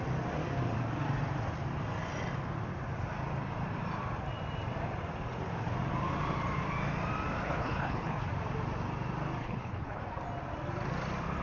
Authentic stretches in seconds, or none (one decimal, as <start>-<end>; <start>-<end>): 0.0-7.4; 8.3-9.4; 10.0-11.4